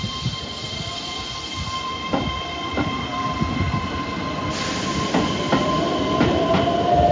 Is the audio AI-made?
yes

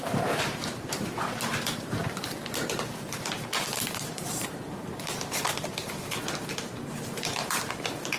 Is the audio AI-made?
yes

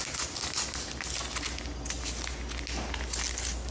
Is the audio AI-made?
no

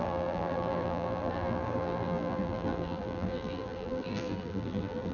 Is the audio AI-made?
yes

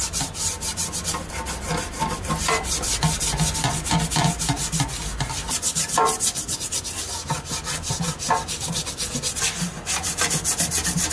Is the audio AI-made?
no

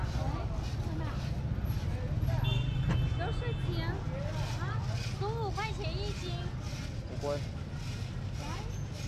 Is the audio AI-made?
no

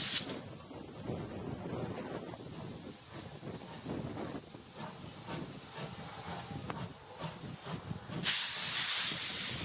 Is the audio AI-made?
no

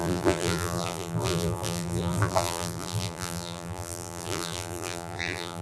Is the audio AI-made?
yes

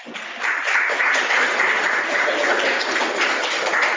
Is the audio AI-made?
no